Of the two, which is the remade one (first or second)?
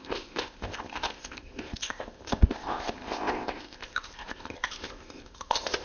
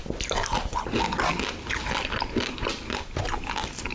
first